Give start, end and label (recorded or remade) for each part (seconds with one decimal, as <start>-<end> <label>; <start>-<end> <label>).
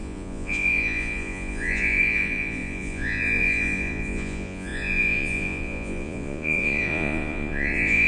0.0-8.1 remade